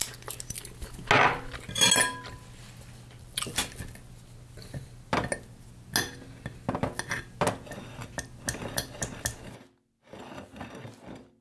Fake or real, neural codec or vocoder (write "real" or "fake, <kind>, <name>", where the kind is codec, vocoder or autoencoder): real